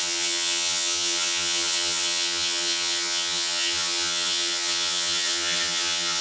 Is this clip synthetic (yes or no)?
yes